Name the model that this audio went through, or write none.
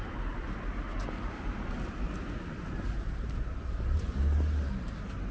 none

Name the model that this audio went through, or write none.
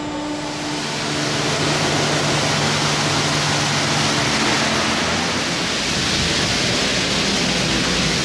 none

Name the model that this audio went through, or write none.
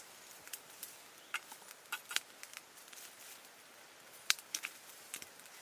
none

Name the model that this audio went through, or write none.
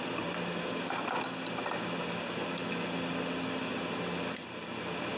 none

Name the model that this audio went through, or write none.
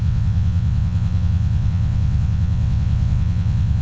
vocoder, WaveNeXt